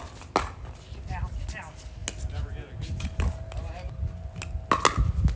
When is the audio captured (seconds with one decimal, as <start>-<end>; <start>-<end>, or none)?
0.0-5.4